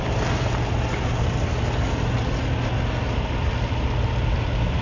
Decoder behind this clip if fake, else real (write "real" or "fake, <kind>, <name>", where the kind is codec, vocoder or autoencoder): real